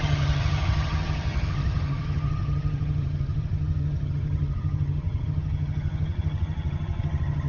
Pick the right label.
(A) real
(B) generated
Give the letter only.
B